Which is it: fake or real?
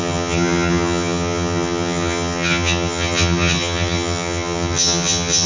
fake